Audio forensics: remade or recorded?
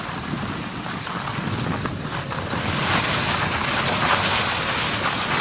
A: recorded